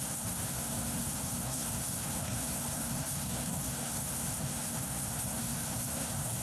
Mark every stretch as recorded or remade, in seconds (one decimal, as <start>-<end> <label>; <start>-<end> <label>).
0.0-6.4 remade